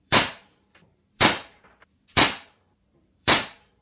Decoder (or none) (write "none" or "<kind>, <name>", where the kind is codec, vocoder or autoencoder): vocoder, BigVGAN v2